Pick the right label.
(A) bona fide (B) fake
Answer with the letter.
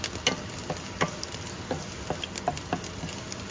A